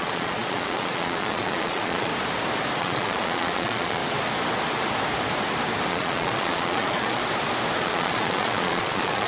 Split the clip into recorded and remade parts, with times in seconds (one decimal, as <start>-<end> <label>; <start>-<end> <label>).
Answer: 0.0-2.1 remade; 2.1-2.8 recorded; 2.8-4.0 remade; 4.0-5.9 recorded; 5.9-7.2 remade; 7.2-7.8 recorded; 7.8-9.3 remade